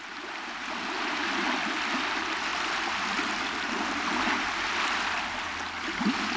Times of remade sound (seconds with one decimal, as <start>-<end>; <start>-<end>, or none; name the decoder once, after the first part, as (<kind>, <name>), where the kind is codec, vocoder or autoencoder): none